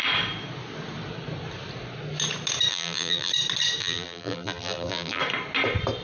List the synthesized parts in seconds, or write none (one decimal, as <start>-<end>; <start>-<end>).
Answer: 2.7-3.3; 3.8-5.2